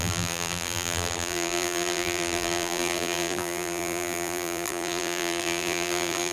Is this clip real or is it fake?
fake